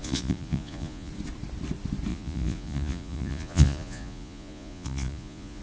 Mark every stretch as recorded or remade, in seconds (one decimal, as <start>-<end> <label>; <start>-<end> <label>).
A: 0.0-1.1 remade; 1.1-2.1 recorded; 2.1-5.6 remade